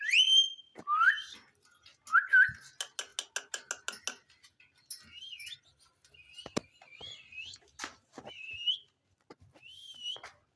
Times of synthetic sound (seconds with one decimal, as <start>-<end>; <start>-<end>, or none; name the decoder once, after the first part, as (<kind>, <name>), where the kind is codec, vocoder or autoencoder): none